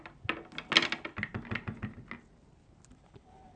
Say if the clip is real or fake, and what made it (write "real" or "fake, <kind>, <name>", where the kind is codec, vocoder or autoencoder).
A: real